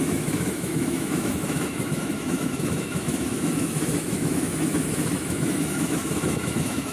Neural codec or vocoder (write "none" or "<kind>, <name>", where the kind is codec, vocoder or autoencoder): autoencoder, DAC-VAE